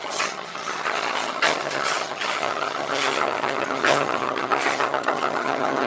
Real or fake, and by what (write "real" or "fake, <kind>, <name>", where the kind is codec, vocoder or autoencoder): fake, vocoder, HiFi-GAN